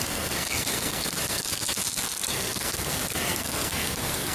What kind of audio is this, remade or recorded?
remade